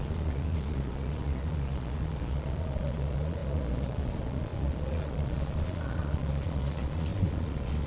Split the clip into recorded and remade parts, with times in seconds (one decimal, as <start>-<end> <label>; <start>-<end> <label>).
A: 0.0-7.9 remade